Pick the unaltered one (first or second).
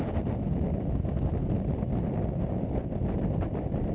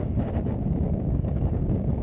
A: first